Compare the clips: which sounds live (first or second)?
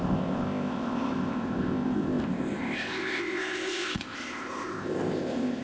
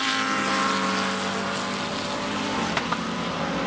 second